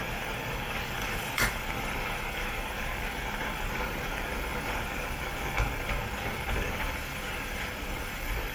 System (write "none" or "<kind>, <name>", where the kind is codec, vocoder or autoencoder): codec, DAC